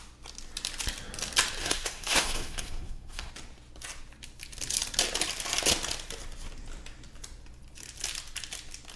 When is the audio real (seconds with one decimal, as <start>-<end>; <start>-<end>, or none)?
0.0-1.6; 3.3-9.0